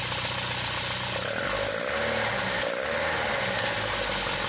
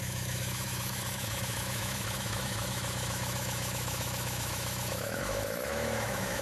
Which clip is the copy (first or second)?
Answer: second